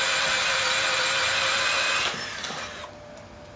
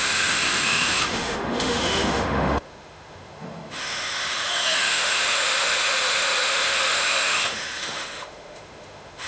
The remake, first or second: second